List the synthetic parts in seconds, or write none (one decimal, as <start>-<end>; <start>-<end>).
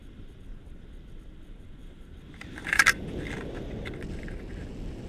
1.8-2.9